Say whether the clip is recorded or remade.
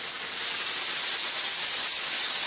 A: recorded